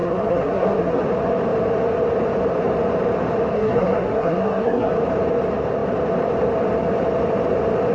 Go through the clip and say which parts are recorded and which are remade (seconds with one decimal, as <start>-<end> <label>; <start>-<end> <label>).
0.0-1.0 remade; 1.0-3.5 recorded; 3.5-4.9 remade; 4.9-7.9 recorded